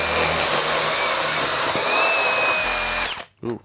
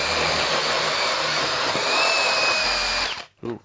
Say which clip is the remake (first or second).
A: second